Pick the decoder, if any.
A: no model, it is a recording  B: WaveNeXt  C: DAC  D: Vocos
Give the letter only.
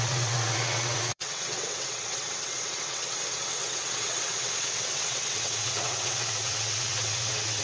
B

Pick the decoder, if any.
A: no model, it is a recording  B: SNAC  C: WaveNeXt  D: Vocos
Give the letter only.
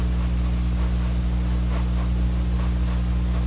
A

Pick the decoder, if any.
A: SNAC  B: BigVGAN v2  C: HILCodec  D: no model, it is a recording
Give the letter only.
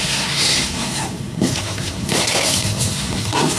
A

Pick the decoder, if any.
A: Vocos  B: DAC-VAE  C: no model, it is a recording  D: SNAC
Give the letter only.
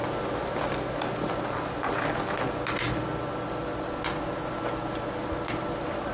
C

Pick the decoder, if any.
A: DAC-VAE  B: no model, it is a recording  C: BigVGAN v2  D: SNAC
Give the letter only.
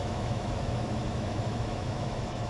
A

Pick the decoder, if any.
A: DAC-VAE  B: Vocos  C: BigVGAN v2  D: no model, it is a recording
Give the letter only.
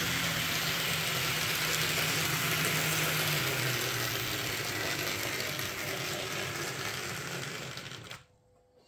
D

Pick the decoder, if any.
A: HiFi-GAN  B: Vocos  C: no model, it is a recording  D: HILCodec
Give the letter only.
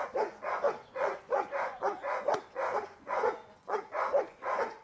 B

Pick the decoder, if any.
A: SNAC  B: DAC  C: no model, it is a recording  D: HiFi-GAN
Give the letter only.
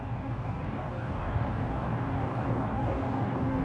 B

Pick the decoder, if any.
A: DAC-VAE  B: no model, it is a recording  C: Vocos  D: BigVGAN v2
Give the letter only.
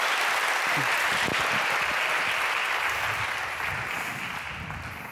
B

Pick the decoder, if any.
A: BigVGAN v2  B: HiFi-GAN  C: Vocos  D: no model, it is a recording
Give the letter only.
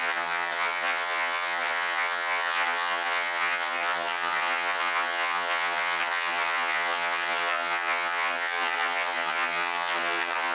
B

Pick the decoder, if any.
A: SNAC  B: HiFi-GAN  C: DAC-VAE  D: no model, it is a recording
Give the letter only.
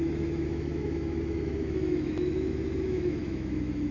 C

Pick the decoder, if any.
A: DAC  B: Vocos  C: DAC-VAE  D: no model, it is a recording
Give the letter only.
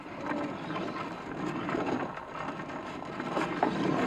D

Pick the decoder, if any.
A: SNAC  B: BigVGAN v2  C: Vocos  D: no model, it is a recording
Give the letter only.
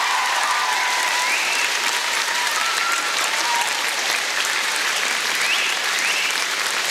B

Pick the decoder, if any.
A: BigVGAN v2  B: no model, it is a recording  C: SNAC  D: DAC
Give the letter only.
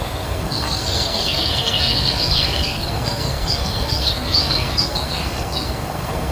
C